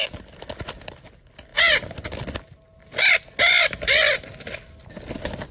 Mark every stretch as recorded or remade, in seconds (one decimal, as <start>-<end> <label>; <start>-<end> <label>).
0.0-5.5 recorded